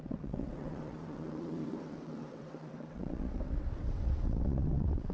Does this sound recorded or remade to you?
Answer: remade